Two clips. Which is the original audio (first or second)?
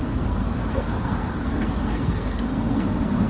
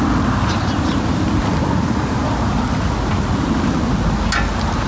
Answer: second